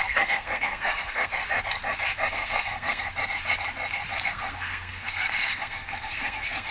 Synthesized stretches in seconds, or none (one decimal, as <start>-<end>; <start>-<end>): 0.0-1.3; 2.3-3.1; 4.1-6.7